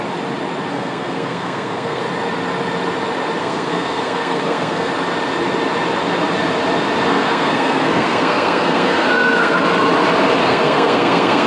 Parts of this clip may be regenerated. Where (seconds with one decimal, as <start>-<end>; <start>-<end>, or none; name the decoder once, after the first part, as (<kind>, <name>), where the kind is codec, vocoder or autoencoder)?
0.7-2.0 (codec, SNAC); 3.4-4.9; 7.1-9.6; 10.4-11.5